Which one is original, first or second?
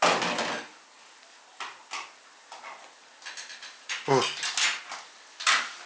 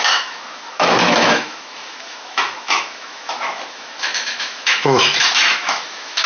first